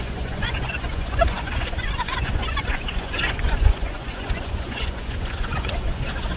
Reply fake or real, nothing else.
fake